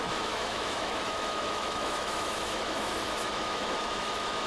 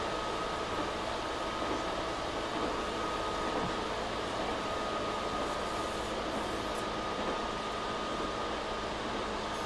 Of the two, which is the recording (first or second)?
second